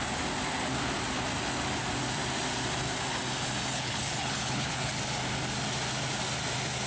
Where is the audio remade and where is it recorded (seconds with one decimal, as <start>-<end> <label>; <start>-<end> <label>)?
0.0-3.7 recorded; 3.7-4.9 remade; 4.9-6.9 recorded